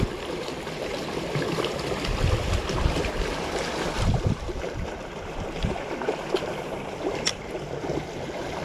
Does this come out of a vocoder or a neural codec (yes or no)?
yes